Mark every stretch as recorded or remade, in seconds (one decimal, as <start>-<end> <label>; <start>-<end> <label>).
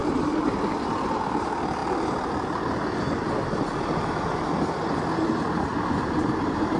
0.0-1.2 remade; 1.2-6.8 recorded